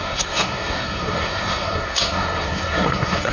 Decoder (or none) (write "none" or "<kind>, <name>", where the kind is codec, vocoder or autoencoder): codec, SNAC